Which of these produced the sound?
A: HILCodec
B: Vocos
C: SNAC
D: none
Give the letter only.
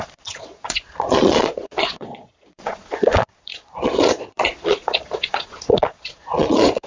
B